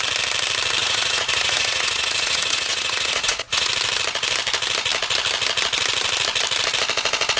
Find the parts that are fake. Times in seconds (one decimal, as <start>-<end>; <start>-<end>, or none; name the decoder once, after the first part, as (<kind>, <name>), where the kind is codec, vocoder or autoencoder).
0.8-3.7 (vocoder, Vocos)